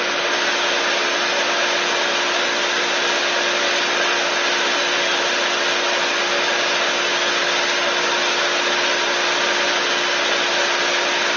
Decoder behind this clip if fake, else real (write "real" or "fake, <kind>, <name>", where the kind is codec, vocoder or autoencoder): real